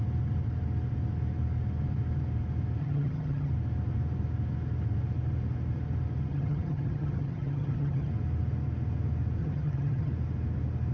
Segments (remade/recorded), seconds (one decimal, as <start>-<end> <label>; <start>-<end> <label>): 0.0-2.8 recorded; 2.8-3.5 remade; 3.5-6.3 recorded; 6.3-8.1 remade; 8.1-9.4 recorded; 9.4-10.1 remade; 10.1-10.9 recorded

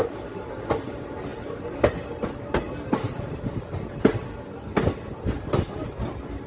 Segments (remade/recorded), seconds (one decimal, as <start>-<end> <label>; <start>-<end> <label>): 0.0-6.5 recorded

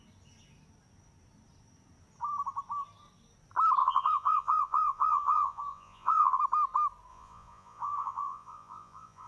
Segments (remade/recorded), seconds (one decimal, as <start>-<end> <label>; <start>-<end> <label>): 0.0-3.8 recorded; 3.8-6.4 remade; 6.4-7.1 recorded; 7.1-9.3 remade